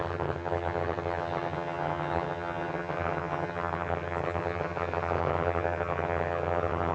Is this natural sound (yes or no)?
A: no